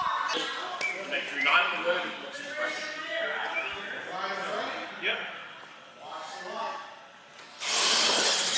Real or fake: real